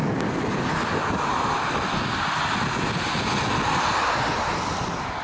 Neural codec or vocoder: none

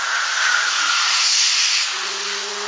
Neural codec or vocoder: vocoder, Vocos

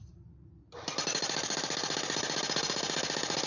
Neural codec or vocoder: none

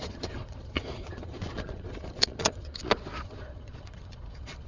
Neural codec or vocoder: vocoder, Vocos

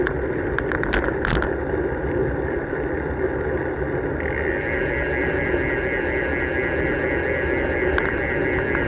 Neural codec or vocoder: none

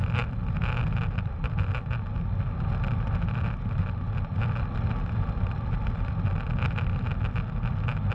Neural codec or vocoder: none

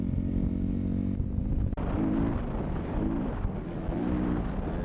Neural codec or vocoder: none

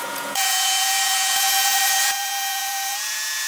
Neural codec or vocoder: vocoder, Vocos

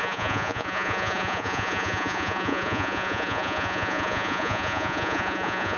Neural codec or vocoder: vocoder, Vocos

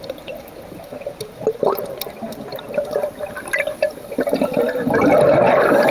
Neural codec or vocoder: none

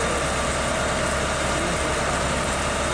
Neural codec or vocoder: none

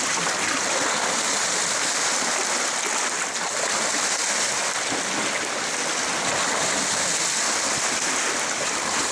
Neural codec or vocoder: none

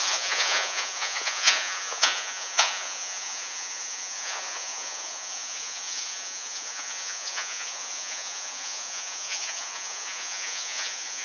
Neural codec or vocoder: vocoder, Vocos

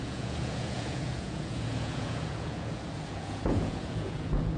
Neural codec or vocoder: vocoder, Vocos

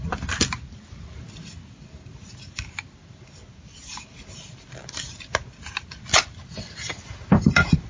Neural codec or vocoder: none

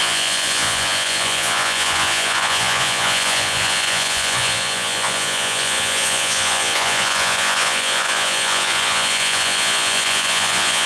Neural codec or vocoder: vocoder, Vocos